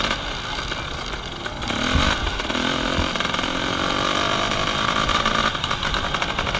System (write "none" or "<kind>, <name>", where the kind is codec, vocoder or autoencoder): none